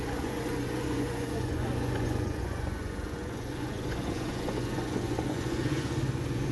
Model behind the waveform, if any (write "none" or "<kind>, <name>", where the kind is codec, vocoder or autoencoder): vocoder, Vocos